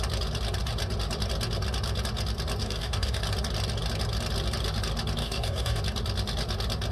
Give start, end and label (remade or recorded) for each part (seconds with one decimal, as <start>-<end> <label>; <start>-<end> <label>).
0.0-2.6 recorded; 2.6-3.2 remade; 3.2-5.2 recorded; 5.2-5.8 remade; 5.8-6.9 recorded